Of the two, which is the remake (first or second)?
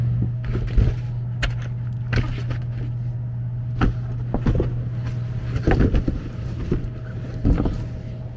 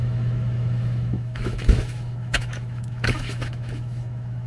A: second